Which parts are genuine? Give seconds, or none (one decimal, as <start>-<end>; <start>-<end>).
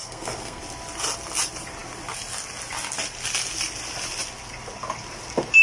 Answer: 0.6-5.6